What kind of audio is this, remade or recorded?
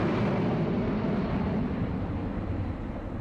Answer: recorded